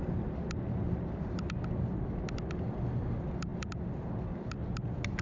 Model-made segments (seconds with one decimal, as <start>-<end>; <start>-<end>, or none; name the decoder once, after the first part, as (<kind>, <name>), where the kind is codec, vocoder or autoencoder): none